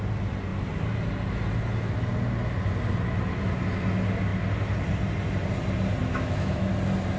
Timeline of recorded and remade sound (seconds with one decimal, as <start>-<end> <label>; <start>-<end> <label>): 0.0-6.0 recorded; 6.0-6.7 remade; 6.7-7.2 recorded